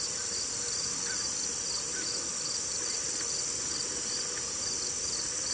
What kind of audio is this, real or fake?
real